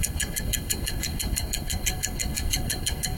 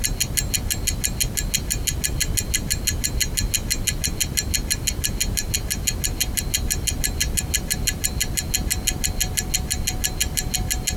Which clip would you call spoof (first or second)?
first